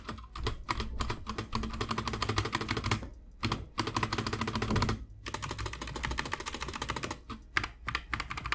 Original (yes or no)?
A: yes